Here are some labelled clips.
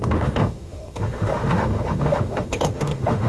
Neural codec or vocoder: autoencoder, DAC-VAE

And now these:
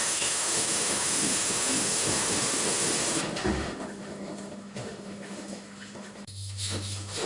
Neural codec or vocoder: autoencoder, DAC-VAE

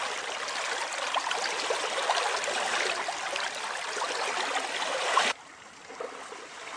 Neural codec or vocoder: none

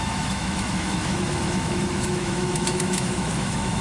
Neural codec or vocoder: autoencoder, DAC-VAE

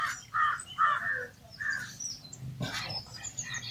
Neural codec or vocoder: none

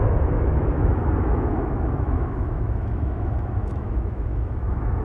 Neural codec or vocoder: autoencoder, DAC-VAE